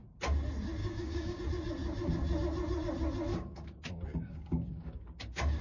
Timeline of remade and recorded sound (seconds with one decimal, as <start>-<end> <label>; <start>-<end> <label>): 0.0-0.8 recorded; 0.8-1.4 remade; 1.4-3.3 recorded; 3.3-5.6 remade